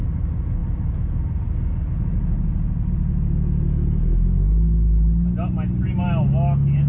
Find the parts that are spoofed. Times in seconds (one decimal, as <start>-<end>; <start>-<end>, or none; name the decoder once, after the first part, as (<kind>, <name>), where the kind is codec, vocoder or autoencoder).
none